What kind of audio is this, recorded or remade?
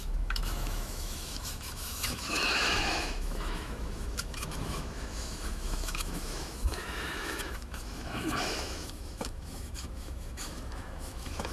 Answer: remade